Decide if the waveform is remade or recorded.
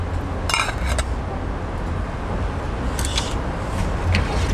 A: recorded